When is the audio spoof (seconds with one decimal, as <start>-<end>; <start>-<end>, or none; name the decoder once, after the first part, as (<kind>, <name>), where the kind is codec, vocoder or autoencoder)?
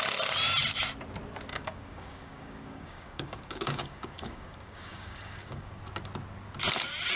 1.5-5.8 (codec, DAC)